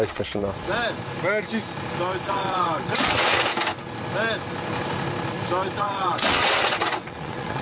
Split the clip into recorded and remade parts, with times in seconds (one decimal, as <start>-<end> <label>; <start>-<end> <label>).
0.0-0.4 remade; 0.4-2.3 recorded; 2.3-3.5 remade; 3.5-5.8 recorded; 5.8-7.6 remade